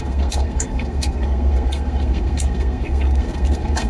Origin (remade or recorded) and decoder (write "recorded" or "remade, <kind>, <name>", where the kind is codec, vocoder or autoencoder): remade, codec, SNAC